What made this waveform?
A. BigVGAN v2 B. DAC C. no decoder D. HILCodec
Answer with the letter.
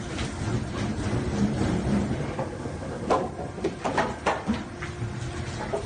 C